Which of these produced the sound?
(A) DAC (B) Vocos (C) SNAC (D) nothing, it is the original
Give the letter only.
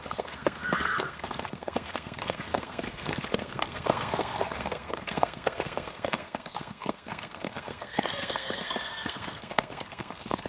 C